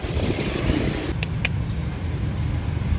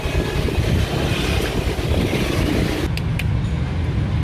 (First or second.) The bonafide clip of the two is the second